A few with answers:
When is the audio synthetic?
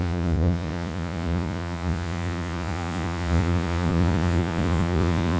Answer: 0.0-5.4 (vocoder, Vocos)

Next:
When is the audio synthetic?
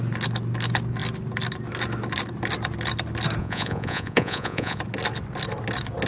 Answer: 3.4-4.8 (vocoder, Vocos)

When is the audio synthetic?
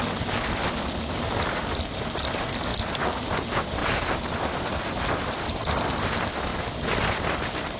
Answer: none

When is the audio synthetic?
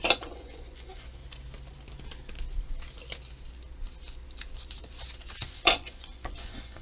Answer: 0.0-1.2 (vocoder, Vocos); 5.3-6.8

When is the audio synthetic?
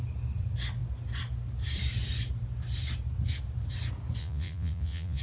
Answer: 4.2-5.2 (vocoder, Vocos)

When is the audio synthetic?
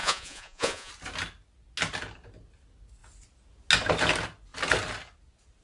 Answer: 0.0-0.9 (vocoder, Vocos)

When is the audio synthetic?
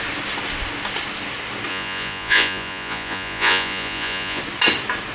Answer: 1.7-4.4 (vocoder, Vocos)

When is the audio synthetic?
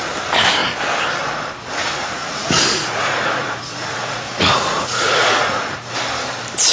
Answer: 1.8-5.8 (vocoder, Vocos)